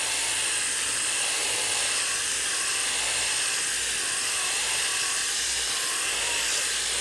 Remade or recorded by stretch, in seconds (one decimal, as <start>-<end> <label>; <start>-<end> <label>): 0.0-1.4 recorded; 1.4-2.1 remade; 2.1-4.9 recorded; 4.9-5.9 remade; 5.9-7.0 recorded